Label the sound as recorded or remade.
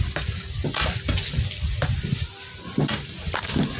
recorded